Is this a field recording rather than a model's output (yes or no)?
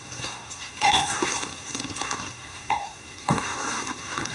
no